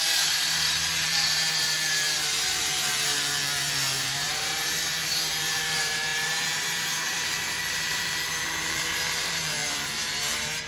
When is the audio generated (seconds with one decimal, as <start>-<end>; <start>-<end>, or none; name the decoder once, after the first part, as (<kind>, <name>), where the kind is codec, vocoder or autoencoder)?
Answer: 0.0-10.7 (vocoder, BigVGAN v2)